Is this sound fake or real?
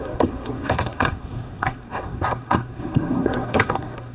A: fake